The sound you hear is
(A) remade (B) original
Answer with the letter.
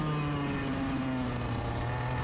B